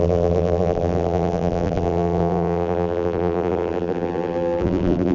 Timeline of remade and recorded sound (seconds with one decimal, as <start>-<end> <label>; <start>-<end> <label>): 0.0-5.1 remade